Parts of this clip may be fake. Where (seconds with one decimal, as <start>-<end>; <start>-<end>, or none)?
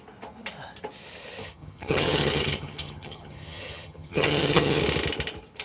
1.4-4.8